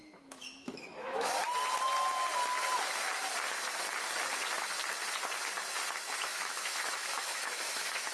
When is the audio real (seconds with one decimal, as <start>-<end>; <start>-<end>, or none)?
1.4-6.2